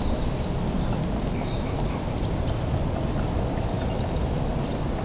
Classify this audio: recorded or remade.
recorded